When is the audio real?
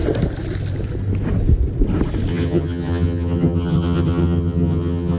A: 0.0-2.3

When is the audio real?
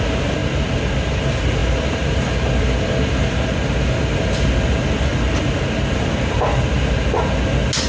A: 0.0-7.9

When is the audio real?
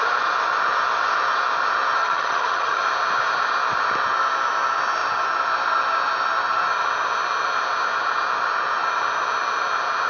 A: 0.0-2.0; 2.8-10.1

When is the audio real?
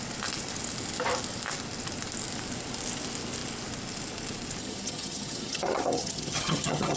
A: 0.0-4.6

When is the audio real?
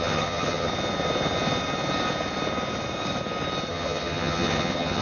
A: 0.7-3.7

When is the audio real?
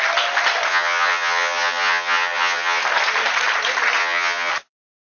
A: 0.0-0.7; 2.8-4.0; 4.5-5.0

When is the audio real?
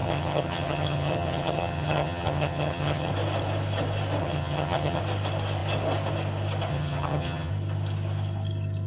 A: 3.1-4.2; 5.0-6.7; 7.5-8.9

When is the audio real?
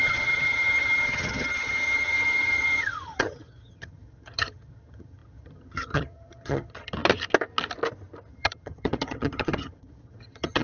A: 7.0-8.3